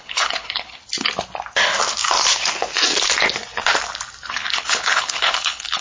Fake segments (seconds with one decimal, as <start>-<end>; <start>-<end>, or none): 0.0-0.8; 4.3-5.8

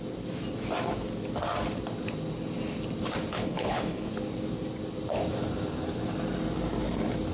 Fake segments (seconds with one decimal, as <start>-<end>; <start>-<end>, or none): 3.3-4.1

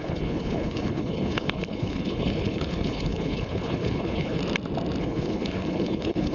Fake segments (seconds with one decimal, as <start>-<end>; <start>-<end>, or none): 0.0-4.4; 5.0-6.3

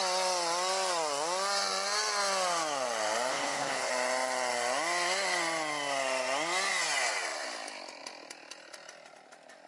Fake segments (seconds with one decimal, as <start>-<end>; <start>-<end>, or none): 3.3-3.9

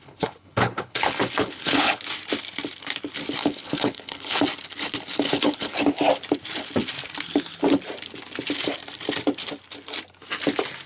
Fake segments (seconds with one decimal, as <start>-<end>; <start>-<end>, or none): 0.0-2.0; 3.4-4.4; 5.3-5.8

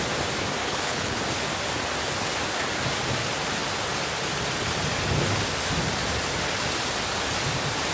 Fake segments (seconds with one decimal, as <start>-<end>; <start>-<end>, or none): 0.6-1.2

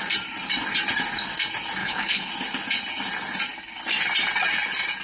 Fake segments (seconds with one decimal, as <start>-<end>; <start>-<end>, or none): 1.8-2.3